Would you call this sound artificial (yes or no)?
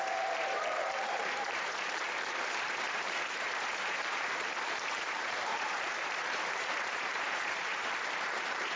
yes